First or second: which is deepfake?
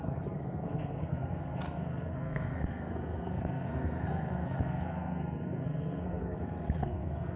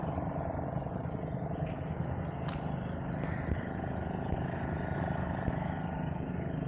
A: first